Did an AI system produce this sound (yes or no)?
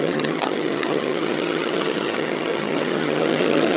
yes